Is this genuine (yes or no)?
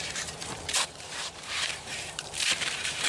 no